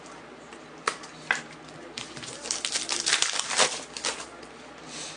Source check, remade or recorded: remade